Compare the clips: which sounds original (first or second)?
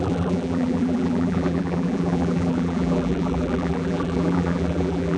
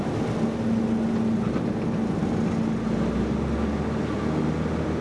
second